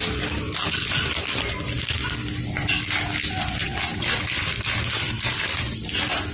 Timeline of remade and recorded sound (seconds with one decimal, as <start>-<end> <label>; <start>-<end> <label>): 0.0-6.3 recorded